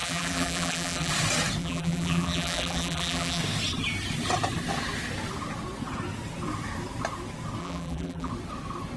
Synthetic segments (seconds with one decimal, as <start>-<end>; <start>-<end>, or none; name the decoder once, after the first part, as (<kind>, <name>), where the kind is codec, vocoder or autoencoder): 0.0-1.1 (vocoder, BigVGAN v2); 1.6-3.4; 7.6-8.3